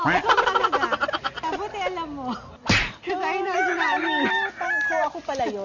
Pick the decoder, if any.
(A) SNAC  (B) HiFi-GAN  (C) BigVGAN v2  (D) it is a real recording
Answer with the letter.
D